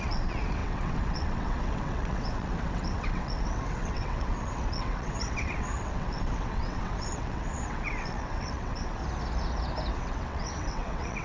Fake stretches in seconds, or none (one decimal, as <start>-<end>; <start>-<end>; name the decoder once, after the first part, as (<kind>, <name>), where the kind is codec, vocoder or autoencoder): 0.0-9.0 (vocoder, WaveNeXt); 9.9-11.2